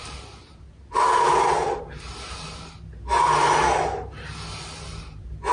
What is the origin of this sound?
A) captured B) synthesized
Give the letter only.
A